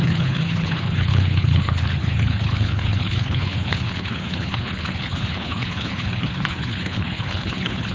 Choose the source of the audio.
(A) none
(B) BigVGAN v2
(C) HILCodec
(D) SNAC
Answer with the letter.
C